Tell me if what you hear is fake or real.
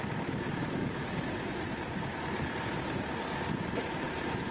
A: real